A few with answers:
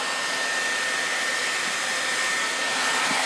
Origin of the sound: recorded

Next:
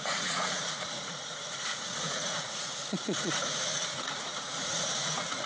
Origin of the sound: remade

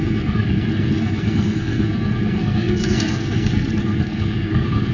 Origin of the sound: remade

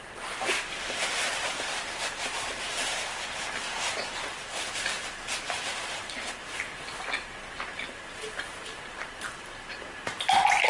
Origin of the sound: remade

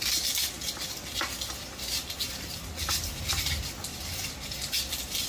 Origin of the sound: recorded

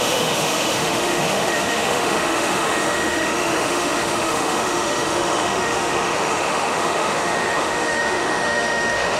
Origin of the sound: remade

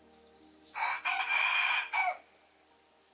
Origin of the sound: recorded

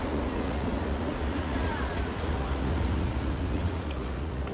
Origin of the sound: remade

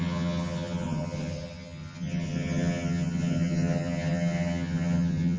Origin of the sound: remade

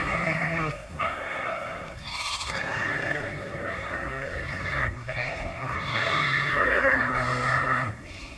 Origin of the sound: remade